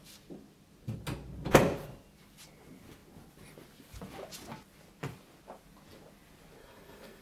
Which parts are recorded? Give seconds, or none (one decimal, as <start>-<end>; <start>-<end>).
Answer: 0.0-6.6